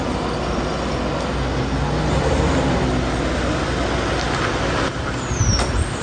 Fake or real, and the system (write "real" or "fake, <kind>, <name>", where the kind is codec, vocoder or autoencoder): real